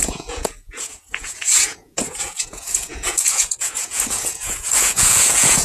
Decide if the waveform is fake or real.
fake